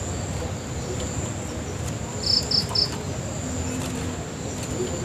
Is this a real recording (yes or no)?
yes